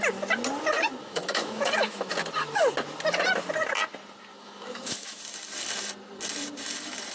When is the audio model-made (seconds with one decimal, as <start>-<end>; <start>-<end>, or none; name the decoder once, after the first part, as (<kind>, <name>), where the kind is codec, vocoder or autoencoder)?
1.0-2.1 (autoencoder, DAC-VAE); 4.3-5.2